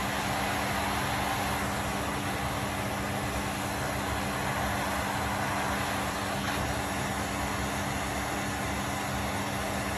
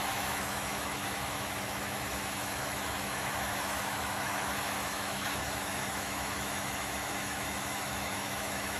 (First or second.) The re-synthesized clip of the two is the second